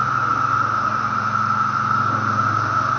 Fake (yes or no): no